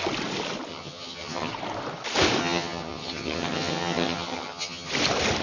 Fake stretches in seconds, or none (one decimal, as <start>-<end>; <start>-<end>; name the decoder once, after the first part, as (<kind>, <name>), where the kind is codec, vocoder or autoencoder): 0.7-1.5 (vocoder, HiFi-GAN); 2.4-4.9